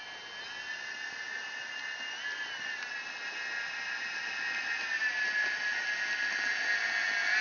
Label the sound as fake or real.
real